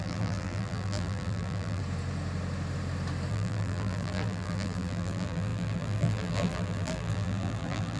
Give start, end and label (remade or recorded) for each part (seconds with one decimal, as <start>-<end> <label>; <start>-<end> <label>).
0.0-1.8 remade; 1.8-3.3 recorded; 3.3-8.0 remade